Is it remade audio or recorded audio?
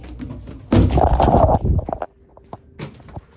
recorded